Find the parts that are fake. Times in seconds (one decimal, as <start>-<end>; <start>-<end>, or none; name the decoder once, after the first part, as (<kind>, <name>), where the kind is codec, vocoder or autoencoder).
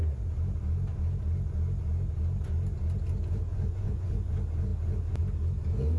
3.5-4.3 (vocoder, Vocos)